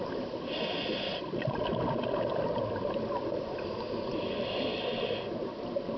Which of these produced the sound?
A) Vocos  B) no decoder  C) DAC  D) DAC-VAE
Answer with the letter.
B